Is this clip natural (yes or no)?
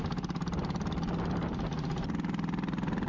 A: yes